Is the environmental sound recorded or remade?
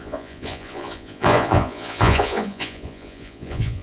remade